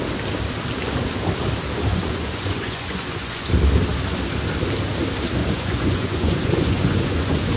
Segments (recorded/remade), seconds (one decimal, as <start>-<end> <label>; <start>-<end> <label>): 0.0-1.9 recorded; 1.9-3.5 remade; 3.5-5.4 recorded; 5.4-7.6 remade